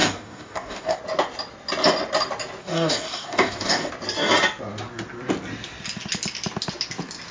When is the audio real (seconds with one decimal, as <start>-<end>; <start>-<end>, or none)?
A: 1.0-2.6; 3.9-7.3